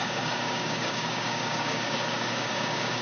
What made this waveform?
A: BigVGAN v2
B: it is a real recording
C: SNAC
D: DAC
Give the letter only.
D